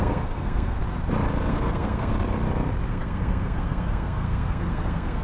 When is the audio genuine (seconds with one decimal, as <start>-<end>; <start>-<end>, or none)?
0.8-1.5; 2.1-2.9